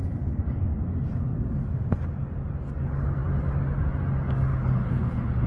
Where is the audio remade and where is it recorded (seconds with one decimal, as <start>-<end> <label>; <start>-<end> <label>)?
0.0-4.5 recorded; 4.5-5.5 remade